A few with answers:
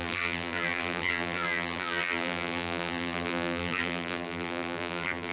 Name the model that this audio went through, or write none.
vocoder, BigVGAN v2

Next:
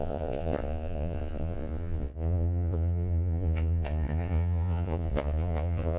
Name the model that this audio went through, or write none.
vocoder, Vocos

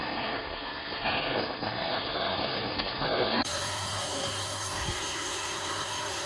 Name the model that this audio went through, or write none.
codec, SNAC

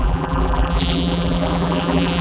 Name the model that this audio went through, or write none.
vocoder, BigVGAN v2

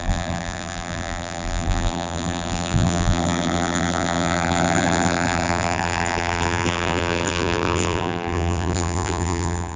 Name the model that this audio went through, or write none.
vocoder, BigVGAN v2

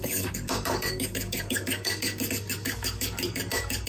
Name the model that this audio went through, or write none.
codec, DAC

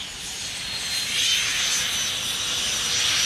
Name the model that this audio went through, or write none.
none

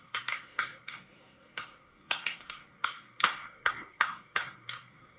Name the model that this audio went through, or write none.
codec, SNAC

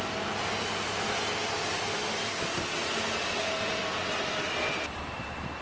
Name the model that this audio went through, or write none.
none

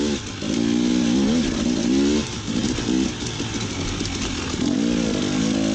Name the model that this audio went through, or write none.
none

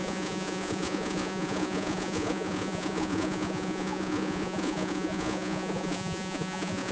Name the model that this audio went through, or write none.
vocoder, Vocos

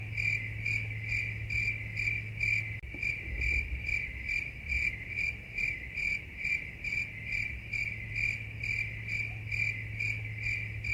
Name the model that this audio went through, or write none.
none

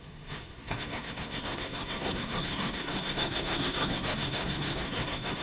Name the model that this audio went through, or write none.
codec, SNAC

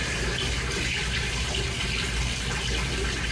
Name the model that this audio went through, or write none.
none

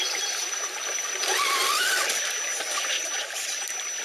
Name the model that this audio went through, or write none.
none